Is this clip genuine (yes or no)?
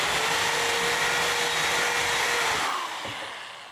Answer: yes